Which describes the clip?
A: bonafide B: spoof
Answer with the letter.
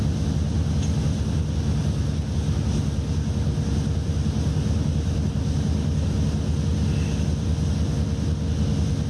A